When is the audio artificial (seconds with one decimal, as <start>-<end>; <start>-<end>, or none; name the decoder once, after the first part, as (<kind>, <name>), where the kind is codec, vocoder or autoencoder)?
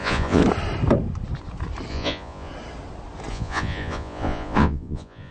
0.0-0.4 (vocoder, Vocos); 1.9-2.5; 3.3-5.3